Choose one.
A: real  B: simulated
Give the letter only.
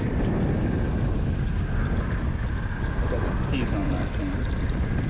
A